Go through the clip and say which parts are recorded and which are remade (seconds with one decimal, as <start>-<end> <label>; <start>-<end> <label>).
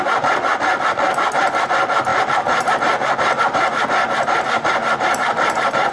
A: 0.0-0.7 remade; 0.7-1.4 recorded; 1.4-5.9 remade